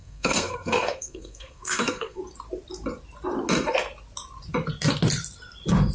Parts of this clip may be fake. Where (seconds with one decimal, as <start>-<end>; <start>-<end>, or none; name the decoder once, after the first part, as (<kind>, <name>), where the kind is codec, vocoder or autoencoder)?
0.0-2.2 (codec, SNAC)